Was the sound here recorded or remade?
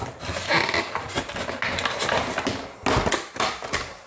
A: recorded